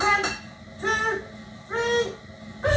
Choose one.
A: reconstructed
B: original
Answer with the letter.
B